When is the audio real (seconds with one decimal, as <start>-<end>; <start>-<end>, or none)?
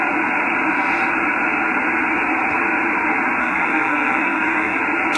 0.0-3.4; 4.8-5.2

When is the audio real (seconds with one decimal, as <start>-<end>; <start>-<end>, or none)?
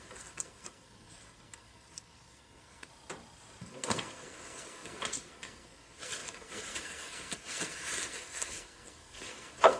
2.9-3.6